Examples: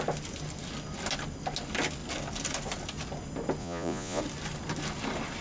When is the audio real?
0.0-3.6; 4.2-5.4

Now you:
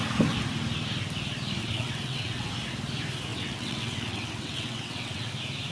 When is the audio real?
0.0-1.6; 2.5-3.3; 5.3-5.7